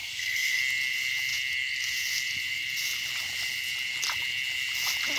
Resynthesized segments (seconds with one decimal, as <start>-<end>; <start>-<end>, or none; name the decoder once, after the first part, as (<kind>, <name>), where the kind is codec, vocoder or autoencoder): 0.0-0.6 (codec, SNAC)